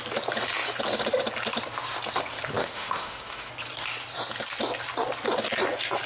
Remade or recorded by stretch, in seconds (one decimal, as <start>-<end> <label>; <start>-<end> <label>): 0.0-2.6 recorded; 2.6-3.5 remade; 3.5-6.1 recorded